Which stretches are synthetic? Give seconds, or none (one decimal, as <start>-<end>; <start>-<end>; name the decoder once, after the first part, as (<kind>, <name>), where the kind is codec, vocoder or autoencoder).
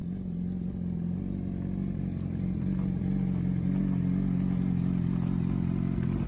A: none